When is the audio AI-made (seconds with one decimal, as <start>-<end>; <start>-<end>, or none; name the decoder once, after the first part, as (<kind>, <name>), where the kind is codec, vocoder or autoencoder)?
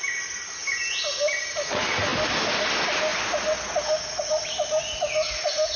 none